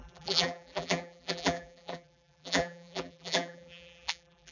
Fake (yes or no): yes